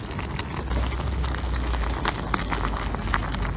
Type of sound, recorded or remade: recorded